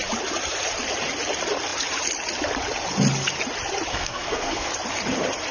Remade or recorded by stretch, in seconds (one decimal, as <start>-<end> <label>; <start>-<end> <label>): 0.0-3.9 recorded; 3.9-4.7 remade; 4.7-5.5 recorded